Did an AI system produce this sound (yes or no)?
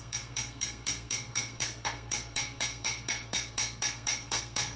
yes